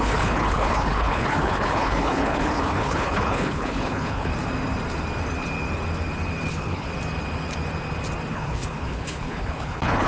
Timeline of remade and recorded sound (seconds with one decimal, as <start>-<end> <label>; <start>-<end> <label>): 0.0-4.3 remade; 4.3-6.5 recorded; 6.5-6.9 remade; 6.9-8.3 recorded; 8.3-10.1 remade